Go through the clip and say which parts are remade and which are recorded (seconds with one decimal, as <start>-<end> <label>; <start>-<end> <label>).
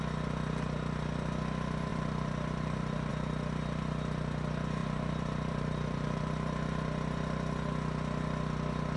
0.0-1.9 recorded; 1.9-3.1 remade; 3.1-4.8 recorded; 4.8-6.2 remade; 6.2-9.0 recorded